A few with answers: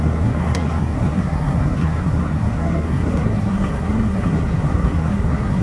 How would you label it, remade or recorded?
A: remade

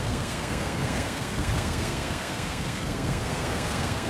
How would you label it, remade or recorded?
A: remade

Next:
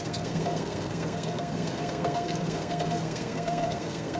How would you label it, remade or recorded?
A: remade